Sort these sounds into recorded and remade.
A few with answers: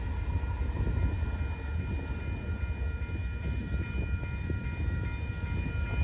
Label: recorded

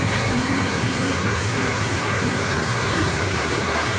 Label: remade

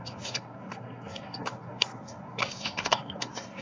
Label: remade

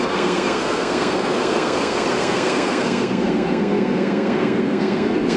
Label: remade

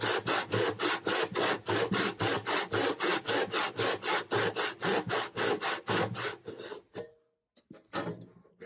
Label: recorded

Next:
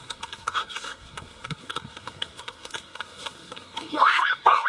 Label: remade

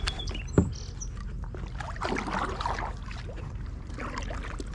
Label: recorded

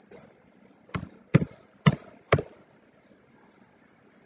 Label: recorded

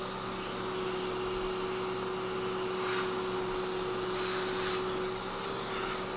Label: recorded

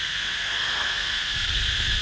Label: remade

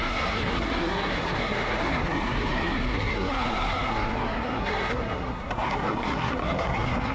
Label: remade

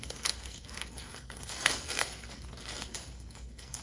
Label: remade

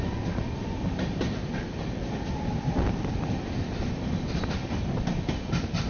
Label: recorded